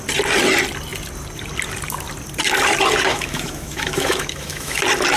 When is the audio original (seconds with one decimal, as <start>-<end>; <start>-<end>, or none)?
0.0-3.1; 4.8-5.2